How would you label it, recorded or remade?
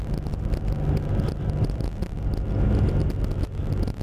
recorded